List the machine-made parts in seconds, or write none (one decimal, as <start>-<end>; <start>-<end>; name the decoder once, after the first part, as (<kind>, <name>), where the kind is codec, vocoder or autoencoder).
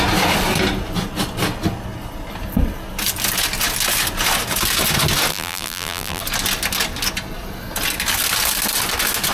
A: 5.3-6.2 (vocoder, BigVGAN v2)